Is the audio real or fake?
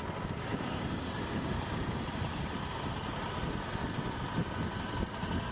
real